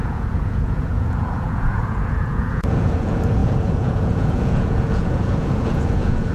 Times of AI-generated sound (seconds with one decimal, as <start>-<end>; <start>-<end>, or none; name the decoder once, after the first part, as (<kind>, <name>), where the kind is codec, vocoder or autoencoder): 0.0-6.3 (vocoder, Vocos)